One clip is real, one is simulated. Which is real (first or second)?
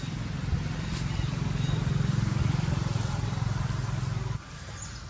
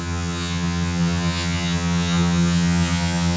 first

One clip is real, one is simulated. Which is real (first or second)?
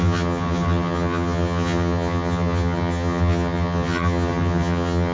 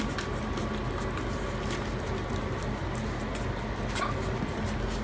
second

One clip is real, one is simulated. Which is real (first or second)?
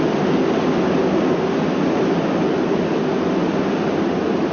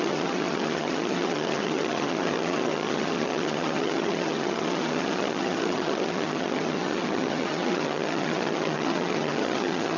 first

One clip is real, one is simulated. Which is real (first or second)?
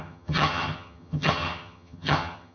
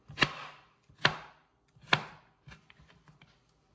second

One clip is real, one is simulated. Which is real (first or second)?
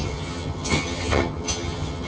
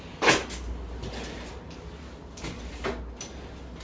second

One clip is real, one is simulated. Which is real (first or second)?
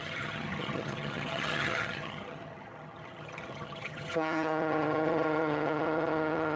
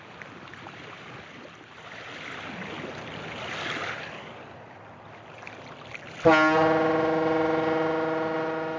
second